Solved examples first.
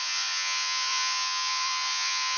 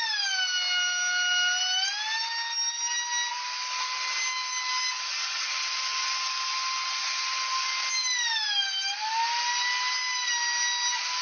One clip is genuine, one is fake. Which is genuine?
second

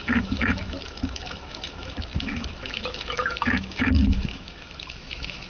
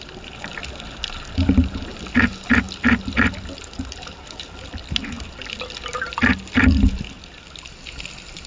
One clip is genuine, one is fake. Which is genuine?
second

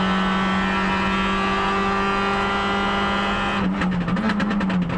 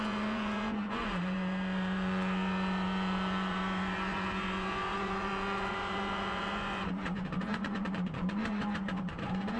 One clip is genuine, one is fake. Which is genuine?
first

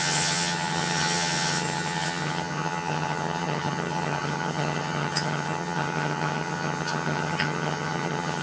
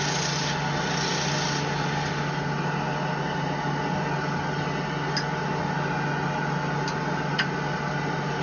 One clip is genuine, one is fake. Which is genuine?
second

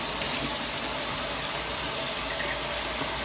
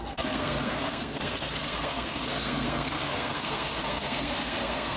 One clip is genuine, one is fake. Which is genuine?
first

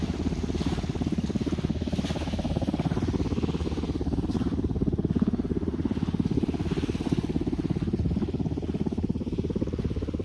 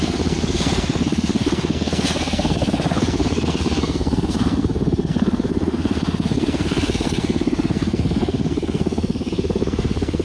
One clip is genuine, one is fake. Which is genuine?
first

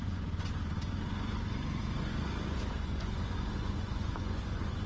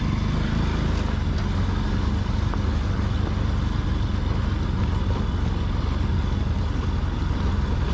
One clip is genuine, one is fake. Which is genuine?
second